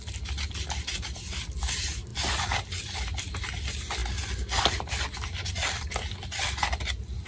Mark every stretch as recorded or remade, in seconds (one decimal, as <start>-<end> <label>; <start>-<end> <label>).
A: 0.0-7.3 recorded